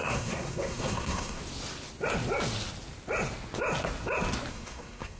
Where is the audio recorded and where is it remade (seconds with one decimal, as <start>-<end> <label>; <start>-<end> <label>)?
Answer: 0.0-1.4 remade; 1.4-4.5 recorded; 4.5-5.2 remade